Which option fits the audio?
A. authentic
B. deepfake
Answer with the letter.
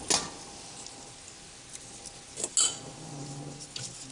A